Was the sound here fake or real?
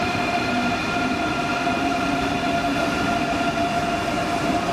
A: fake